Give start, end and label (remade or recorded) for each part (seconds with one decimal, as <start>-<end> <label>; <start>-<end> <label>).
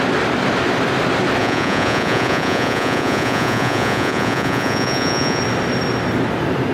0.0-1.4 recorded; 1.4-5.4 remade; 5.4-6.7 recorded